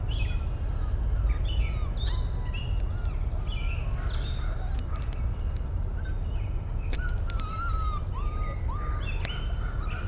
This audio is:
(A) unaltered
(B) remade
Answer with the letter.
A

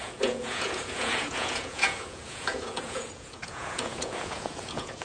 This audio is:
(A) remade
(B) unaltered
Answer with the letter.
A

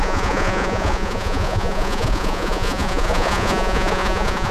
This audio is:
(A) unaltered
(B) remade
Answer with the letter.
B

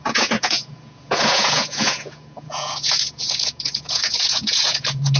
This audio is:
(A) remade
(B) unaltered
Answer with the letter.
A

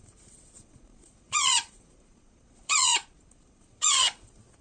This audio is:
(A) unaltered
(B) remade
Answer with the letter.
B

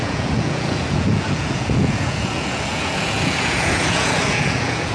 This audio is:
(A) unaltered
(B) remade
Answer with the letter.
B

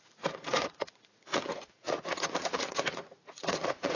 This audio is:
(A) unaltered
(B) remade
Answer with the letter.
B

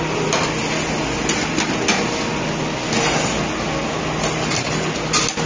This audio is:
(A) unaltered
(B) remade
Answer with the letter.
A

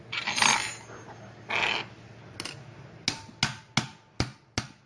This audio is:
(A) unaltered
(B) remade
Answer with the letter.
A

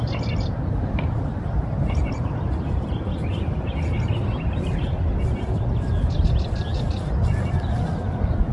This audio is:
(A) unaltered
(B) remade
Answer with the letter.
A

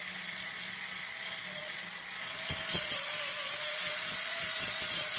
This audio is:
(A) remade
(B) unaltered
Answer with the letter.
A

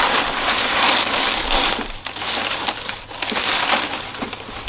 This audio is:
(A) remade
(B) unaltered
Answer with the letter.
B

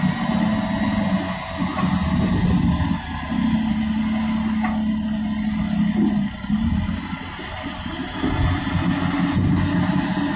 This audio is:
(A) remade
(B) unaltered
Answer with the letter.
B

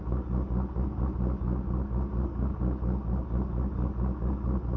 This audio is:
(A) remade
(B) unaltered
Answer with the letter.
B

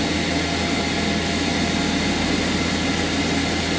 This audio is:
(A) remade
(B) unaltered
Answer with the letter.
B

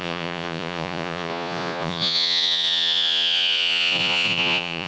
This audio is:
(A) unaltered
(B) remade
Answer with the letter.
B